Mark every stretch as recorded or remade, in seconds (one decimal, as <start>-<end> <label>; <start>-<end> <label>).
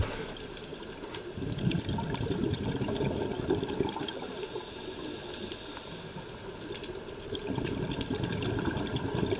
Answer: 0.0-9.4 recorded